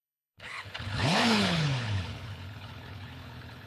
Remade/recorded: remade